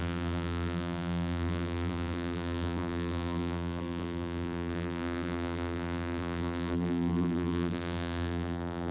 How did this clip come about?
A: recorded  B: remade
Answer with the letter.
B